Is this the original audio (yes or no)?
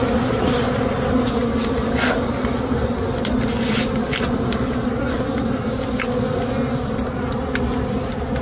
yes